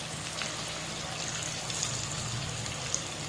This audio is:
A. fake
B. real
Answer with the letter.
B